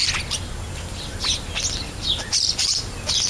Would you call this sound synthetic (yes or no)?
no